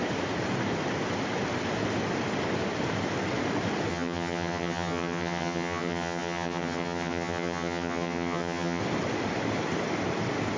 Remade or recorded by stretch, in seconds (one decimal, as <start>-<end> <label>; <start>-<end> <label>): 0.0-3.9 recorded; 3.9-8.8 remade; 8.8-10.6 recorded